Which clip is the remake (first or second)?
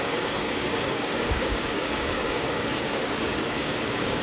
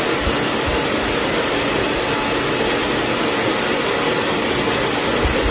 first